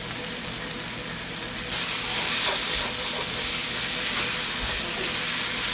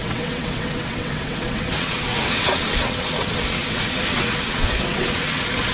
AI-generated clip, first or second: second